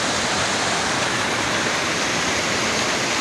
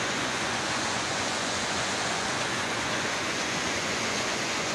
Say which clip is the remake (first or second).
second